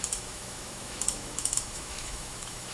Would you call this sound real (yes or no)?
no